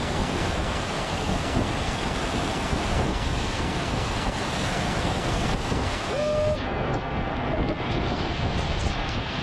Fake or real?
fake